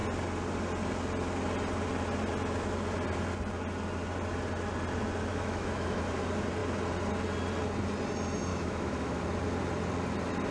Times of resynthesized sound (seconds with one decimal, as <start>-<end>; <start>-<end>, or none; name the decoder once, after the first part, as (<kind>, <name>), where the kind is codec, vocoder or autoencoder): 5.3-6.0 (autoencoder, DAC-VAE); 8.5-9.2